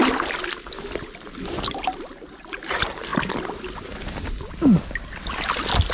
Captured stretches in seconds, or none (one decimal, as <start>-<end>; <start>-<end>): 0.0-5.9